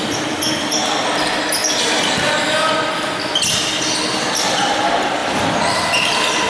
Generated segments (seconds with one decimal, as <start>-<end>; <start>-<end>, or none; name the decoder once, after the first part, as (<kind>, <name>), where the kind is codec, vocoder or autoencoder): 5.2-6.5 (vocoder, BigVGAN v2)